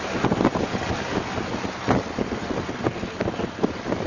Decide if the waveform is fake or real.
real